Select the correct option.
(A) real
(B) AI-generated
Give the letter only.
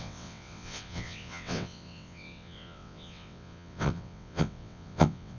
B